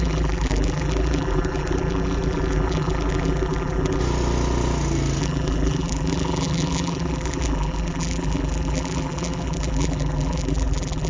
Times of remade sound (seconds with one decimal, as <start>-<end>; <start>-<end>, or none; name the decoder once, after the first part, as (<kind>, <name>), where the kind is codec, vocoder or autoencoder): 0.0-4.0 (vocoder, BigVGAN v2); 5.2-11.1